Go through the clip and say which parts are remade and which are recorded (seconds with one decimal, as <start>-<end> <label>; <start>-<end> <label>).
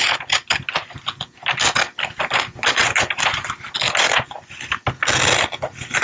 0.0-6.0 recorded